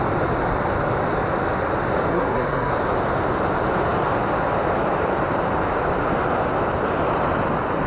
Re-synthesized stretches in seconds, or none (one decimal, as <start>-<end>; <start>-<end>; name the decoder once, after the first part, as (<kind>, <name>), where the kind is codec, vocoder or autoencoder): 2.1-2.7 (codec, SNAC)